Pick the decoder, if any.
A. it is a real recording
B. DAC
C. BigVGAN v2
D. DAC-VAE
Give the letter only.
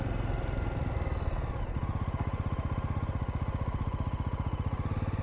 A